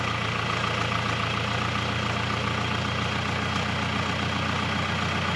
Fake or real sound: real